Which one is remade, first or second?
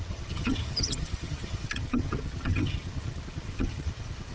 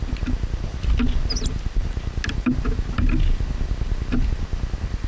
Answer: first